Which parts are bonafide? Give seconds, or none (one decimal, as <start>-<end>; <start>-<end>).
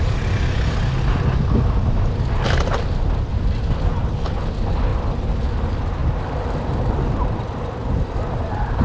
0.0-8.8